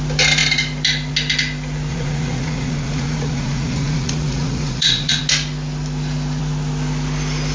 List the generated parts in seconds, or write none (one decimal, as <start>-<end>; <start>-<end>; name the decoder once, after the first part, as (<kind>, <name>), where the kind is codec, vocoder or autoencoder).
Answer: 1.9-5.2 (vocoder, Vocos)

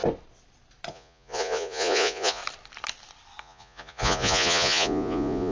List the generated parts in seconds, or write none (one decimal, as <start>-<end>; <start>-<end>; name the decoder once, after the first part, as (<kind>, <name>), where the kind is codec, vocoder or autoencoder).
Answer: 0.9-2.4 (vocoder, Vocos); 3.4-5.5

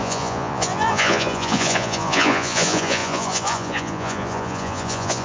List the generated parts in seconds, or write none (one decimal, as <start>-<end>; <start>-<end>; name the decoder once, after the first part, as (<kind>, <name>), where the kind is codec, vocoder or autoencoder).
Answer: 0.0-5.2 (vocoder, Vocos)

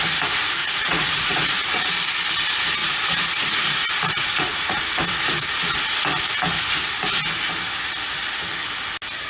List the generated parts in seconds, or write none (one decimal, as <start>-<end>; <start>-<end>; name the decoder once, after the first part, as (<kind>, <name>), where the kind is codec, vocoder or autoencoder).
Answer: 0.6-1.9 (vocoder, Vocos); 2.8-4.8